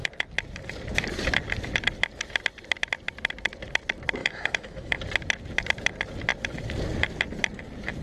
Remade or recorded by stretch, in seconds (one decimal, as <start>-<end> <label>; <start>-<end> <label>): 0.0-4.2 recorded; 4.2-5.0 remade; 5.0-8.0 recorded